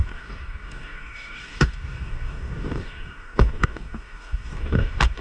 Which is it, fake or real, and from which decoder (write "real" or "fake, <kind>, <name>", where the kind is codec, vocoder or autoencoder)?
fake, codec, DAC